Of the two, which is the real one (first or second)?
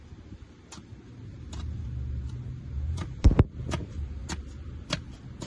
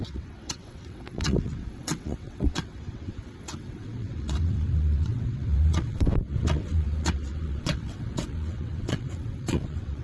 first